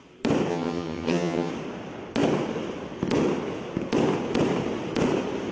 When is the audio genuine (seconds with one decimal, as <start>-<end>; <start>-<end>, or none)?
0.0-0.5; 1.5-5.5